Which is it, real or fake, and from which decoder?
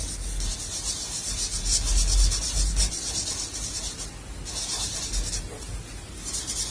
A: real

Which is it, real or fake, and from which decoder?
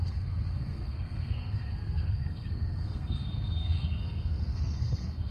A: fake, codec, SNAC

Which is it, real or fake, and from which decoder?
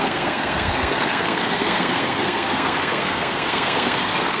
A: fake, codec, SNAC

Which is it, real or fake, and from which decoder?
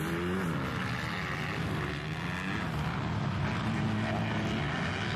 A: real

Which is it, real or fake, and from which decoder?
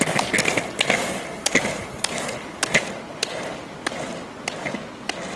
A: real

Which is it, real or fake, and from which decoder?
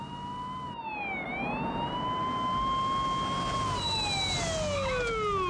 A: real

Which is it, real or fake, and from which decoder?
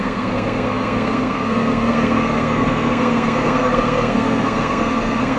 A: fake, codec, SNAC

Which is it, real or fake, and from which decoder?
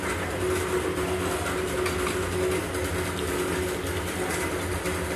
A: real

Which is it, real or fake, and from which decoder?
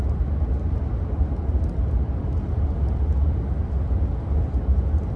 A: real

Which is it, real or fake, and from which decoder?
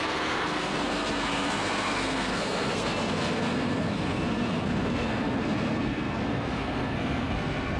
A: fake, codec, SNAC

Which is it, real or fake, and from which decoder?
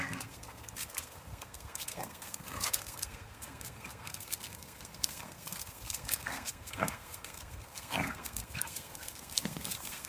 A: fake, codec, SNAC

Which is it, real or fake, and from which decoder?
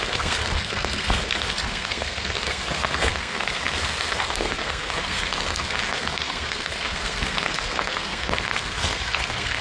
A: fake, codec, SNAC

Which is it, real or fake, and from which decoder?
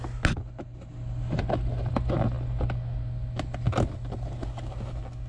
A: real